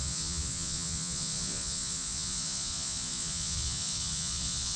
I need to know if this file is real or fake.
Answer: fake